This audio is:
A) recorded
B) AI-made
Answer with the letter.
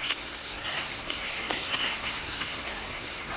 B